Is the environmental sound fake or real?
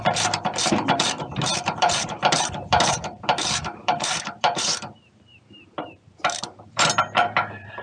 fake